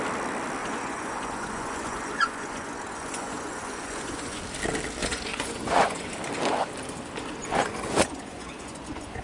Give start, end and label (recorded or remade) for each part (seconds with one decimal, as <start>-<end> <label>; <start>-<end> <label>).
0.0-0.6 recorded; 0.6-4.4 remade; 4.4-5.0 recorded; 5.0-6.1 remade; 6.1-7.4 recorded; 7.4-9.2 remade

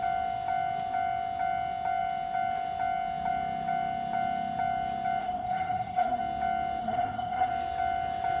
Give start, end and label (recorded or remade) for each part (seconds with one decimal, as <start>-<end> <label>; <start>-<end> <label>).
0.0-5.2 recorded; 5.2-6.2 remade; 6.2-6.8 recorded; 6.8-7.5 remade; 7.5-8.4 recorded

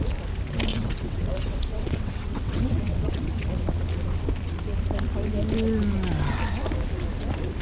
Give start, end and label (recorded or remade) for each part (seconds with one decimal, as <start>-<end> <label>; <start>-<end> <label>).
0.0-0.7 recorded; 0.7-3.6 remade; 3.6-7.6 recorded

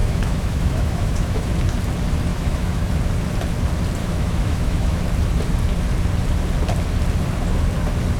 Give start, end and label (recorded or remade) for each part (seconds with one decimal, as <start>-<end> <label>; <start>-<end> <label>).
0.0-1.5 remade; 1.5-2.3 recorded; 2.3-2.9 remade; 2.9-4.0 recorded; 4.0-5.0 remade; 5.0-8.2 recorded

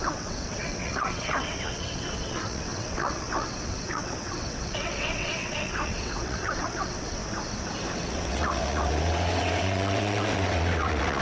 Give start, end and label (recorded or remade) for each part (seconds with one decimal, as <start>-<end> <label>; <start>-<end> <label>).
0.0-7.2 remade; 7.2-7.9 recorded; 7.9-11.2 remade

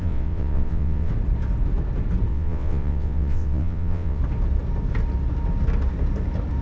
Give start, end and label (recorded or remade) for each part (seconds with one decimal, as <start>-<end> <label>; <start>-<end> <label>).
0.0-1.1 remade; 1.1-2.3 recorded; 2.3-4.2 remade; 4.2-6.6 recorded